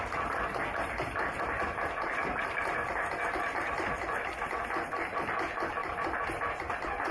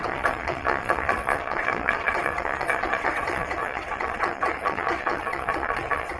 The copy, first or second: second